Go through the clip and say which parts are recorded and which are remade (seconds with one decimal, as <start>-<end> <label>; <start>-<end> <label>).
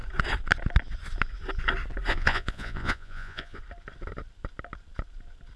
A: 0.0-2.1 recorded; 2.1-3.6 remade; 3.6-5.6 recorded